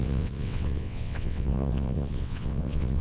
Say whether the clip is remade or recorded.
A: remade